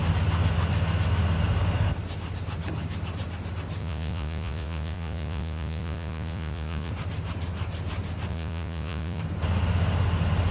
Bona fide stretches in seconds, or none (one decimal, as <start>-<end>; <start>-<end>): 0.0-3.8; 6.9-8.3; 9.2-10.5